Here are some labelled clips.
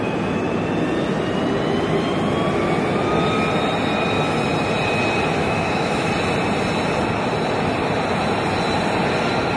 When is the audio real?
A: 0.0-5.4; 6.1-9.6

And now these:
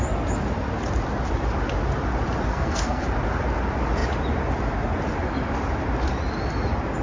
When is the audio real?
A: 0.0-2.5; 3.0-7.0